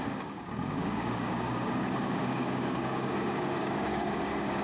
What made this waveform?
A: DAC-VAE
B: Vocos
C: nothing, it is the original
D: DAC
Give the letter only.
D